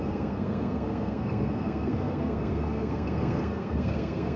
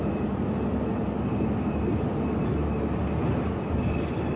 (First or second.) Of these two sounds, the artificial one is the first